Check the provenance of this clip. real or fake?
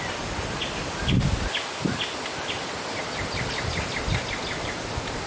real